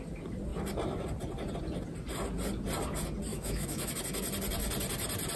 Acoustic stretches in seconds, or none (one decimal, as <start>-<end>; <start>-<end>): 0.0-3.3; 3.9-5.4